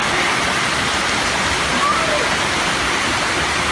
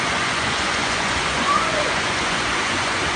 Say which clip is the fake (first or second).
second